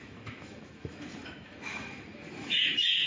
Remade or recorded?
remade